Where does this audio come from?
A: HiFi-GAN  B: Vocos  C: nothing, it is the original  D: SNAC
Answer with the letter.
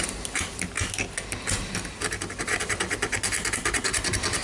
C